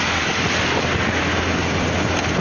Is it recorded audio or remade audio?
recorded